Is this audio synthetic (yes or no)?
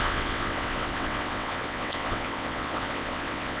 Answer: yes